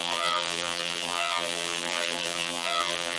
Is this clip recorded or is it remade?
remade